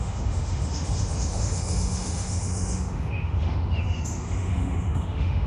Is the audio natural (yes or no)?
no